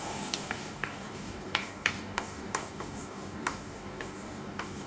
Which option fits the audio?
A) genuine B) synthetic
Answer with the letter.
B